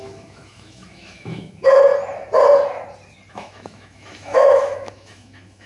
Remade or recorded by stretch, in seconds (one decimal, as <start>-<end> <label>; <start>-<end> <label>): 0.0-1.9 remade; 1.9-3.3 recorded; 3.3-5.7 remade